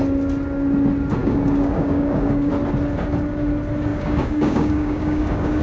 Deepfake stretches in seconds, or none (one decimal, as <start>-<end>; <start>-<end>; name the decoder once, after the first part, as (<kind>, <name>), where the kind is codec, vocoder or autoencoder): 1.2-2.5 (codec, DAC); 3.9-5.6